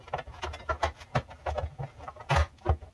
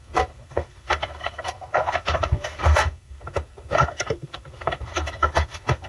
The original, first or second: first